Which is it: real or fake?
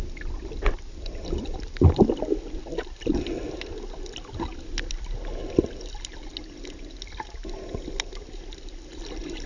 real